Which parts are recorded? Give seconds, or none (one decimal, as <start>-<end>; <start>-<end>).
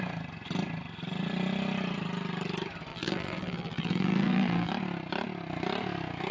0.0-2.9; 4.7-6.3